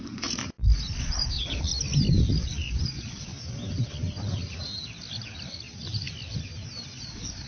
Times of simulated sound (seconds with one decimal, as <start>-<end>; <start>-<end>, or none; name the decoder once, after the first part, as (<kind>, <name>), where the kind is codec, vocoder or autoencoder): 0.0-0.4 (vocoder, Vocos); 1.0-1.7; 2.9-3.3; 7.0-7.5